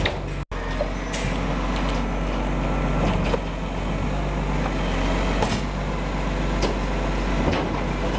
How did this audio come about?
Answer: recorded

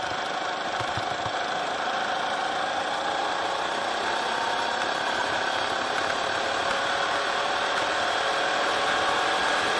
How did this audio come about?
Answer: recorded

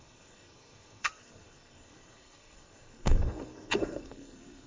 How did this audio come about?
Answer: remade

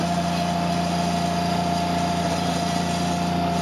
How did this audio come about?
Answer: recorded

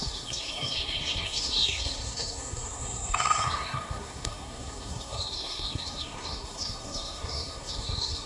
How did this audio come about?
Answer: remade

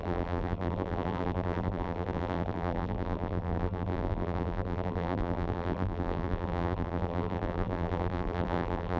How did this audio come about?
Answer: remade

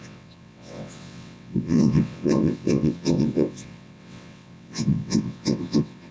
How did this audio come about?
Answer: remade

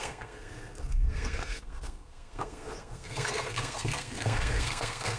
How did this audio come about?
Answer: remade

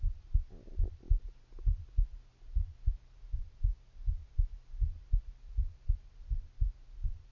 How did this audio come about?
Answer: recorded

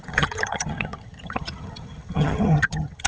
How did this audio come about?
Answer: remade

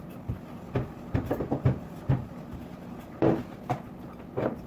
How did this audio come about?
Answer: recorded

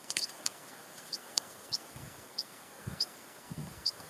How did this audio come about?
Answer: remade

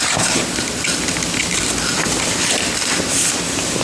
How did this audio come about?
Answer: remade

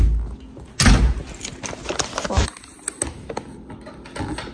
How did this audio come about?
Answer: recorded